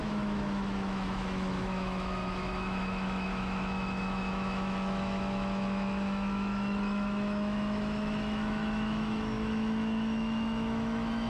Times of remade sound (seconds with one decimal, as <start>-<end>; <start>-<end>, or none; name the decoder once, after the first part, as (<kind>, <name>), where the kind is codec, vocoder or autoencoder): 0.0-11.3 (autoencoder, DAC-VAE)